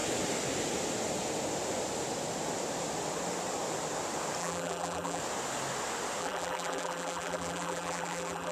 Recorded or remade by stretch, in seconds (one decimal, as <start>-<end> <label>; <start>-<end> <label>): 0.0-4.4 recorded; 4.4-5.2 remade; 5.2-6.2 recorded; 6.2-8.5 remade